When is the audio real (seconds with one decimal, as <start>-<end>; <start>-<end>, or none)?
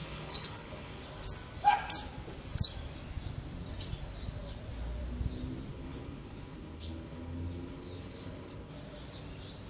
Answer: 1.0-5.7; 8.7-9.7